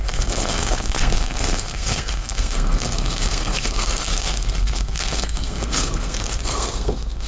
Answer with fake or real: fake